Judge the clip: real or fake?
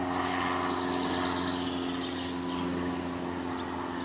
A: real